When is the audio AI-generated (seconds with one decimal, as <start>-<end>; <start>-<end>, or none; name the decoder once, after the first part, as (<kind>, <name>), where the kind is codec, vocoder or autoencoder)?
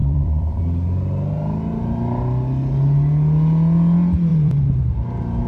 0.0-0.6 (vocoder, BigVGAN v2); 4.3-4.8